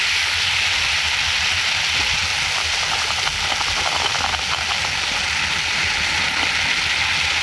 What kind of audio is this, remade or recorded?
recorded